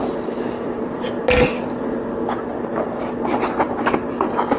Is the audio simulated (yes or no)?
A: no